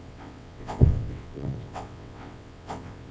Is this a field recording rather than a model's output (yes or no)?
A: no